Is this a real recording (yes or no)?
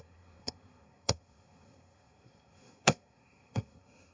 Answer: no